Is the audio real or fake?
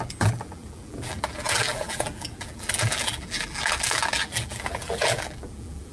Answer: fake